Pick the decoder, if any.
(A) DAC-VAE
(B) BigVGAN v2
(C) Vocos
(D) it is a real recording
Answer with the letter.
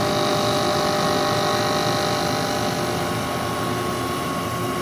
D